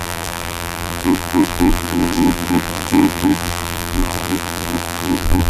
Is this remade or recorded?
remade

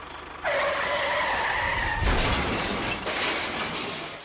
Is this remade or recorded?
recorded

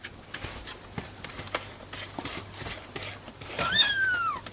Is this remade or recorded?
recorded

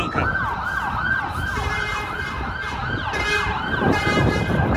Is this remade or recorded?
recorded